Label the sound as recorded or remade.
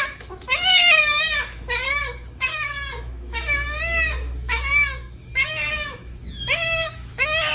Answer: remade